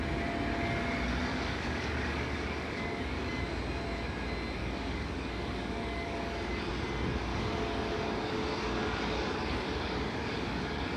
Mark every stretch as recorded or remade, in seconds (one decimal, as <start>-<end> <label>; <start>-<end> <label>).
0.0-1.3 recorded; 1.3-3.4 remade; 3.4-4.6 recorded; 4.6-6.7 remade; 6.7-7.3 recorded; 7.3-11.0 remade